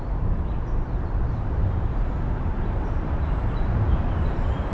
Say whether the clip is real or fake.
fake